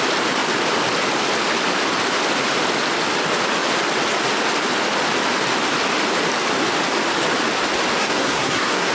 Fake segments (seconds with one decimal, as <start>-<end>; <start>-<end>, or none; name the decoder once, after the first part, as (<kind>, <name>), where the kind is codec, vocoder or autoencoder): 8.0-8.9 (codec, SNAC)

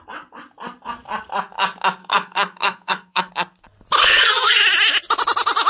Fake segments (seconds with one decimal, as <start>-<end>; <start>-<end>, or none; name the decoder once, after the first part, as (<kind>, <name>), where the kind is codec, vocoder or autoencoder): 2.0-3.3 (codec, SNAC); 4.0-4.6

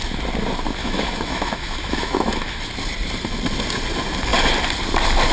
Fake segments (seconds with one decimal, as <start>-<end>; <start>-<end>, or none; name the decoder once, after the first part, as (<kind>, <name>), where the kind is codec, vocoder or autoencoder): 0.8-2.6 (autoencoder, DAC-VAE)